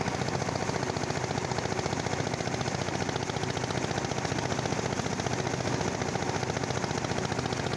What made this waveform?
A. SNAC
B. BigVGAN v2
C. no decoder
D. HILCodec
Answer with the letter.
C